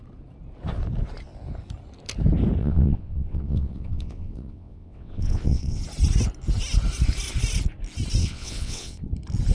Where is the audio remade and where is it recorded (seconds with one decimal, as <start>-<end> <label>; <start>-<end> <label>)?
0.0-2.6 recorded; 2.6-5.8 remade; 5.8-8.2 recorded; 8.2-9.0 remade; 9.0-9.5 recorded